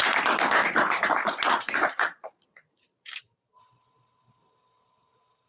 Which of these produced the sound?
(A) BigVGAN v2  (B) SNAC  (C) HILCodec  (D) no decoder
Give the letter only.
A